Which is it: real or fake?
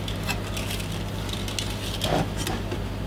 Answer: real